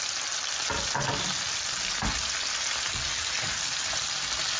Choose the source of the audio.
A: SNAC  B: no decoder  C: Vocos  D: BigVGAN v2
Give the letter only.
B